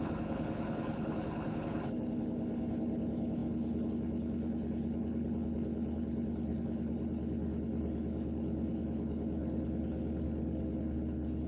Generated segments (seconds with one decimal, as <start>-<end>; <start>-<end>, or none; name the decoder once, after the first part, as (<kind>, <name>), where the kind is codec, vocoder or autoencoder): 0.0-11.5 (codec, HILCodec)